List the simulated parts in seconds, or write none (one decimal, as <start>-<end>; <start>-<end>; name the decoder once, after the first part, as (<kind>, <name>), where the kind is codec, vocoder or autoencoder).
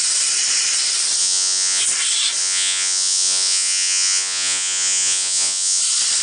1.2-1.8 (vocoder, Vocos); 2.4-5.8